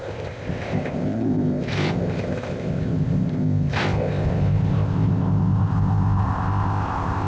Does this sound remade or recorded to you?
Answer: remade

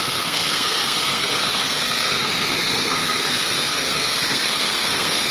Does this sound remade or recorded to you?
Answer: remade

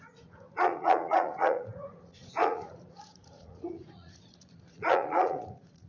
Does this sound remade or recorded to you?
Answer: remade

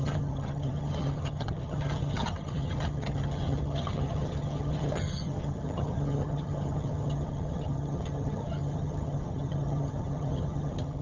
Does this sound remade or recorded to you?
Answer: remade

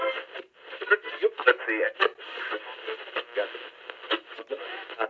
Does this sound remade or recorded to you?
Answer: recorded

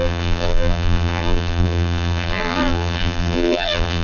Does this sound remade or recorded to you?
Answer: remade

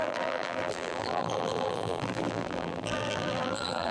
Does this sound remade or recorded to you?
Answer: remade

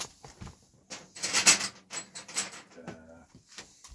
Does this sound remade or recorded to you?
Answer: recorded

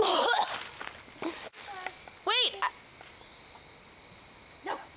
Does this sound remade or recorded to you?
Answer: recorded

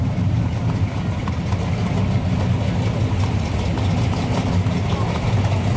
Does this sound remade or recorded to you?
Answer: recorded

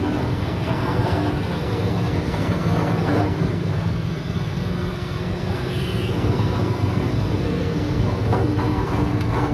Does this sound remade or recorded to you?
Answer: remade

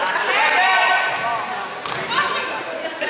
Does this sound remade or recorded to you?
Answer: recorded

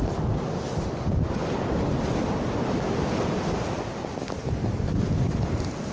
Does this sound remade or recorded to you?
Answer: recorded